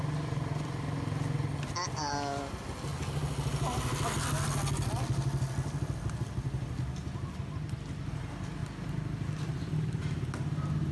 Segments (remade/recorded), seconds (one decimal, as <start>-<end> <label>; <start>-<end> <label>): 0.0-10.9 recorded